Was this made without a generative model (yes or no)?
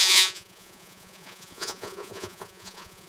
no